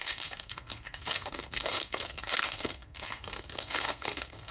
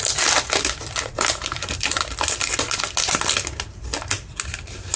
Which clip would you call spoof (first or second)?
first